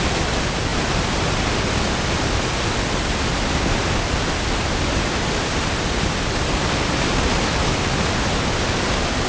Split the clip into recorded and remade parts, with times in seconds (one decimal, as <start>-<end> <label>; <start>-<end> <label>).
0.0-9.3 recorded